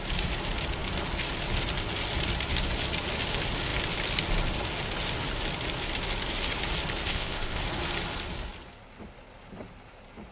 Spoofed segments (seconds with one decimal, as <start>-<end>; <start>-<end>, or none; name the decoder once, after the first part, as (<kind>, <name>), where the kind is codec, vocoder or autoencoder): 7.1-7.6 (codec, ZipCodec)